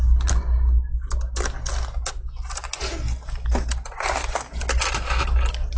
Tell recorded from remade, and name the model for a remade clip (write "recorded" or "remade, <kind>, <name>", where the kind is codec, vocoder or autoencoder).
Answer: recorded